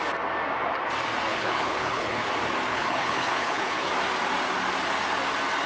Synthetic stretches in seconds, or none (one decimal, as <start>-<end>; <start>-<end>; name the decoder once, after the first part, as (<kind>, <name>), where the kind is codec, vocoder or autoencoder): 1.3-2.3 (codec, HILCodec); 2.7-3.9